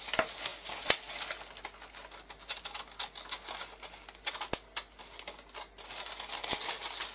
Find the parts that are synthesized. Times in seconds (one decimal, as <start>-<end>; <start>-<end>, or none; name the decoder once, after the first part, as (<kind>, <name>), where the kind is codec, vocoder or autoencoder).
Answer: none